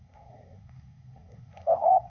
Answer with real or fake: fake